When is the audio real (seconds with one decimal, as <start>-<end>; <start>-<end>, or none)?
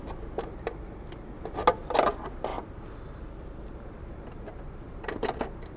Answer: 0.0-2.5; 5.2-5.8